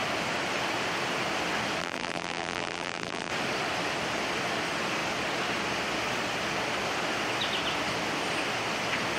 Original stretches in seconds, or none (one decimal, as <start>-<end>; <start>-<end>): 0.0-1.8; 3.3-9.2